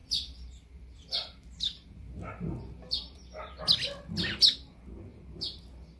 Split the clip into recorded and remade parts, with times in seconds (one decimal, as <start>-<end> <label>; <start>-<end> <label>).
0.0-3.6 remade; 3.6-5.1 recorded; 5.1-5.6 remade; 5.6-6.0 recorded